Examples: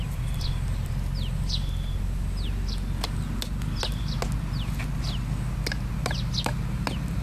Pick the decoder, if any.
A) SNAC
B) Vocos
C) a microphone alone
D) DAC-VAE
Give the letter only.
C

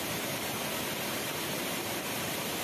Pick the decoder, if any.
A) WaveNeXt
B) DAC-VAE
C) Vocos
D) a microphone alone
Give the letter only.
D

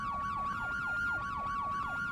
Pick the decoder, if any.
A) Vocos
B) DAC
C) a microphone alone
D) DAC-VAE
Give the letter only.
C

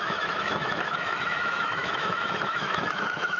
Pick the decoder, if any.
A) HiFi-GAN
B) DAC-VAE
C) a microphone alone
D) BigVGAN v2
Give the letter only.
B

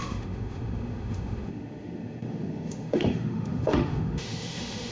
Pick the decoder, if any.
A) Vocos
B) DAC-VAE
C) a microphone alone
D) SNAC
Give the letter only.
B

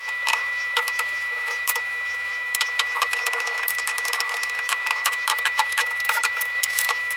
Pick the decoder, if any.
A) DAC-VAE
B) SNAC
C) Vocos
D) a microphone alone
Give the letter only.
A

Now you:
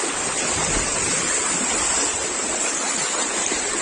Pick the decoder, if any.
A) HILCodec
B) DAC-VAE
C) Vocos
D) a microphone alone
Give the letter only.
D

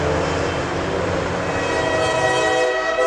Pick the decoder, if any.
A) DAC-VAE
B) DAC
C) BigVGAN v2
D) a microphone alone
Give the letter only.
D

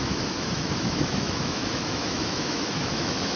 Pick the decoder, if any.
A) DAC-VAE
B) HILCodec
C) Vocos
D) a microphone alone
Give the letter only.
A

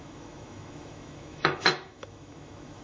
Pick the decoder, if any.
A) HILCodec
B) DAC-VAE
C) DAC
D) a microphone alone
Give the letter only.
B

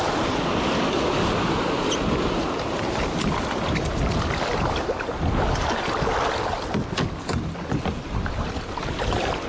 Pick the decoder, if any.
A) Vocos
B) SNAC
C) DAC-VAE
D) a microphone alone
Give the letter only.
D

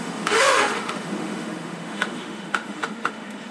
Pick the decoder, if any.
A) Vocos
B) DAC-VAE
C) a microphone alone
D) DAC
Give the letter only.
B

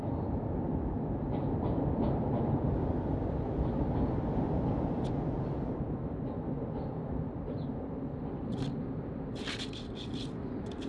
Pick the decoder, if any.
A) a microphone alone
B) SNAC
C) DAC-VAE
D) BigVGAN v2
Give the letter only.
A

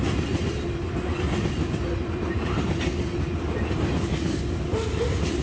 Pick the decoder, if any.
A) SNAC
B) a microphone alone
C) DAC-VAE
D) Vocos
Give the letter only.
B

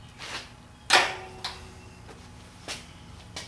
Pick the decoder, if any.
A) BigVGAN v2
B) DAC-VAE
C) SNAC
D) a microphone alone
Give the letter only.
D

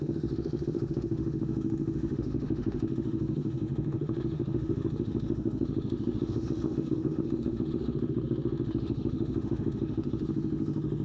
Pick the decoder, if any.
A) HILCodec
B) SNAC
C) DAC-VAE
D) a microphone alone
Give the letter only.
C